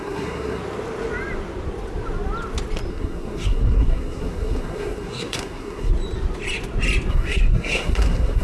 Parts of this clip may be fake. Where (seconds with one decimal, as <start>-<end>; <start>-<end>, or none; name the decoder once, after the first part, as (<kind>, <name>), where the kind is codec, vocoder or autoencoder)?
0.0-0.6 (codec, SNAC); 2.9-5.9; 7.1-8.4